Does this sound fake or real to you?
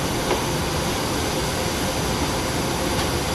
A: real